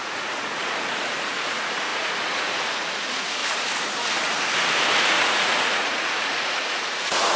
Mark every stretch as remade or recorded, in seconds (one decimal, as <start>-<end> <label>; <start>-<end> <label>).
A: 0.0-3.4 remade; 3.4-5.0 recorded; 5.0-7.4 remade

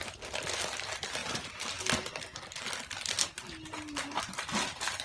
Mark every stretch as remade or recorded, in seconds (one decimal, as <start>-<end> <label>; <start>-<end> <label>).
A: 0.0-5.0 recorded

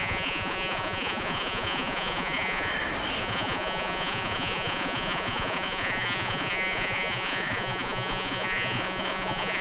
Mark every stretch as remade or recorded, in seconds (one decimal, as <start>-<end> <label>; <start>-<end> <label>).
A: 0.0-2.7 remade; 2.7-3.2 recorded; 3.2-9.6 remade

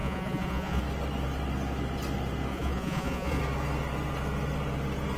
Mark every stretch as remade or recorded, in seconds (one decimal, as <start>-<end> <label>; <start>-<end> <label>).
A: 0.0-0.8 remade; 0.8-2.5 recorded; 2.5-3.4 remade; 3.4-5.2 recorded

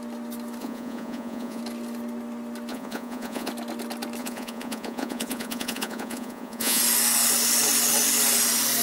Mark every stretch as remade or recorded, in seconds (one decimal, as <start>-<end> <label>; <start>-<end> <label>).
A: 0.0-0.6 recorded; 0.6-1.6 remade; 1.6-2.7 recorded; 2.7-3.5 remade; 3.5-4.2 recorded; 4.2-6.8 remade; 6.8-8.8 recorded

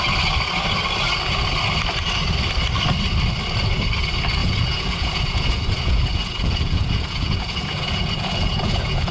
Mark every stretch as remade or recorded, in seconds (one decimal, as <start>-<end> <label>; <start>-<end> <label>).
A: 0.0-4.4 recorded; 4.4-9.1 remade

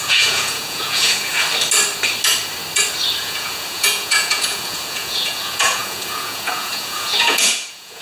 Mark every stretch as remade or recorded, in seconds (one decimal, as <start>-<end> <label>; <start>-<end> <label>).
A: 0.0-1.3 remade; 1.3-3.2 recorded; 3.2-8.0 remade

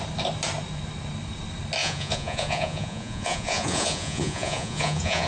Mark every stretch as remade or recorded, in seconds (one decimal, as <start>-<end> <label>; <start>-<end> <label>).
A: 0.0-1.8 recorded; 1.8-5.3 remade